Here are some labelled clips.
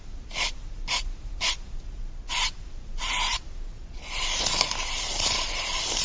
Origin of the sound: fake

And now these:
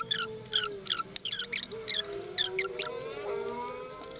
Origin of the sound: real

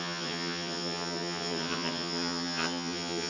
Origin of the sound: fake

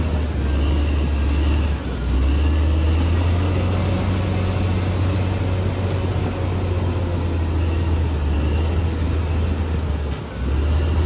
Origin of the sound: real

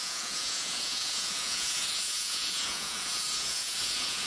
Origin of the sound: fake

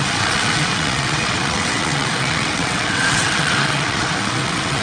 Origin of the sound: fake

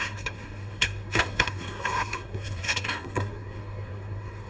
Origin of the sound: fake